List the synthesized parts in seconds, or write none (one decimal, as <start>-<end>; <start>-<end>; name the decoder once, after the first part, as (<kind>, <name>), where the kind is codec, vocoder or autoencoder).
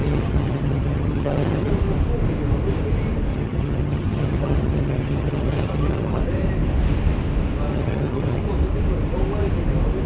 0.0-1.7 (vocoder, HiFi-GAN); 3.3-6.2; 7.7-8.4